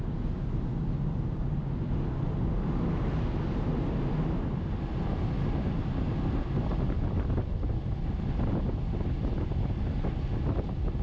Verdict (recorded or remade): recorded